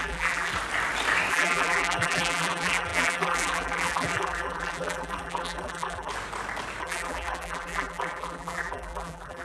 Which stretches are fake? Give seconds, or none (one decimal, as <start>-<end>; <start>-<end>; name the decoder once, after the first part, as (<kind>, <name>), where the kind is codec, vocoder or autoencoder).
0.0-0.5 (vocoder, BigVGAN v2); 1.3-6.1; 6.8-9.4